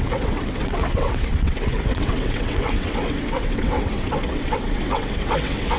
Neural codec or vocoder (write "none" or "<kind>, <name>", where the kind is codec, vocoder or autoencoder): vocoder, WaveNeXt